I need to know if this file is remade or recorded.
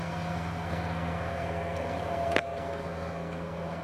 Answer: remade